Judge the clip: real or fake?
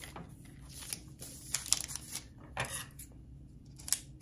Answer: real